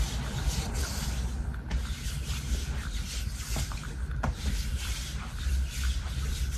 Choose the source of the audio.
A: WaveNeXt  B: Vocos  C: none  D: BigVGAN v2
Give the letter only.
C